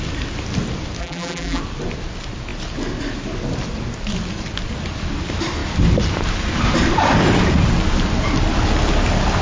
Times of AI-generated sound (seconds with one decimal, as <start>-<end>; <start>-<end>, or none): 1.0-1.6